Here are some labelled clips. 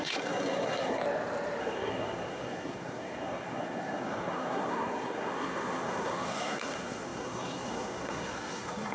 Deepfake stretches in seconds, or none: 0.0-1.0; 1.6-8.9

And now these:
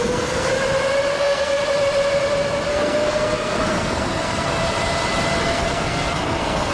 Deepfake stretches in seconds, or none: 0.0-0.5; 1.2-1.6; 2.7-4.6; 5.4-6.7

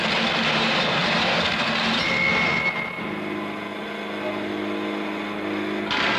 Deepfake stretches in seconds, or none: none

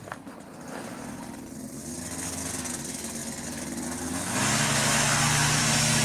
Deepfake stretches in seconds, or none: none

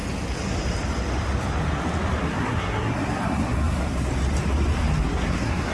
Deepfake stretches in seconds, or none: 2.2-4.1; 5.0-5.7